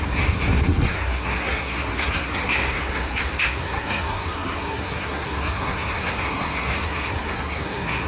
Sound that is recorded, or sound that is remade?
remade